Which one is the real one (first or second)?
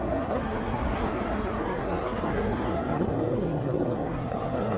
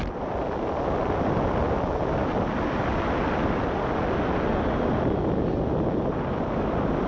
second